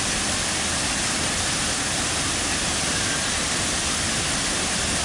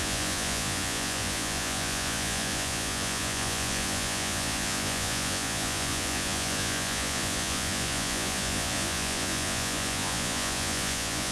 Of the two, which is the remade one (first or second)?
second